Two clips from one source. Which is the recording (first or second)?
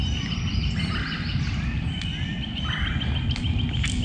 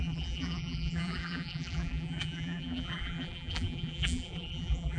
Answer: first